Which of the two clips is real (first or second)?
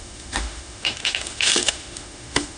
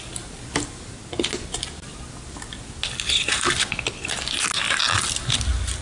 second